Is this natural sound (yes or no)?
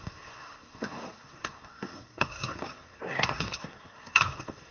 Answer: no